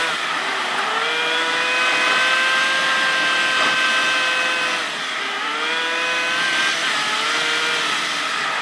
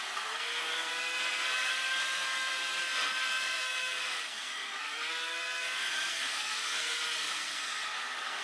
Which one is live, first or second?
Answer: first